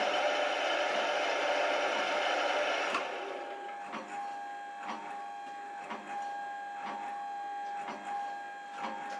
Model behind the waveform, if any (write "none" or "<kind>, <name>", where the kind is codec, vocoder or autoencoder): none